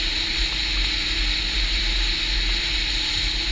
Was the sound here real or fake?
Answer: real